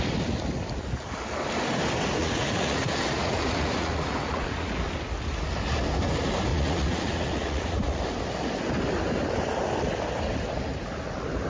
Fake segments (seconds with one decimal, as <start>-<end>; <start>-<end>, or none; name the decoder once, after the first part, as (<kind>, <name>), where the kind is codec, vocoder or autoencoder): 2.2-4.7 (vocoder, Vocos); 6.5-8.0